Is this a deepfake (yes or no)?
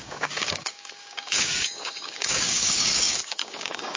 yes